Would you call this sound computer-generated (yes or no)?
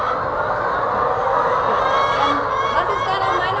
no